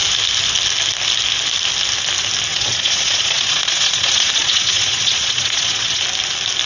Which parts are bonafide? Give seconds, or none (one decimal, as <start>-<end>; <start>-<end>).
0.0-2.5; 6.0-6.7